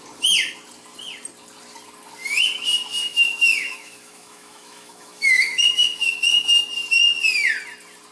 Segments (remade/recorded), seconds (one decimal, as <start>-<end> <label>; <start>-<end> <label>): 0.0-2.9 recorded; 2.9-6.7 remade; 6.7-8.1 recorded